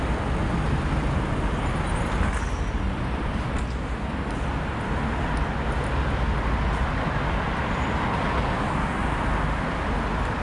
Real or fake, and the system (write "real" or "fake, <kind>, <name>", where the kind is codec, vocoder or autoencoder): real